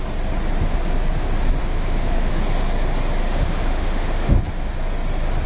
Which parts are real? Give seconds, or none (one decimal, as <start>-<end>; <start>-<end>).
0.0-1.6; 2.3-3.2; 4.4-5.5